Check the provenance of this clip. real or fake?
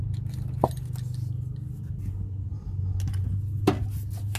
real